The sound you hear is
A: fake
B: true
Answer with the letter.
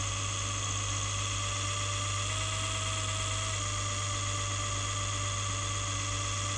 B